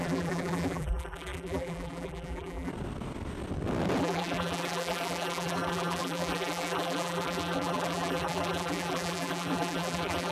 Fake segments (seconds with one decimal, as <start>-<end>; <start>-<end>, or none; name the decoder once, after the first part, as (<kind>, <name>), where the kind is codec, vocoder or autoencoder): 0.0-2.7 (vocoder, BigVGAN v2); 4.0-10.3